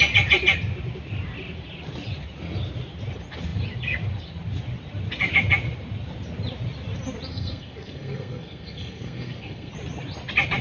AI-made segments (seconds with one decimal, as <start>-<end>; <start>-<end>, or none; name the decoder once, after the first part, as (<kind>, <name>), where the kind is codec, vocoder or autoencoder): 7.3-9.7 (codec, SNAC)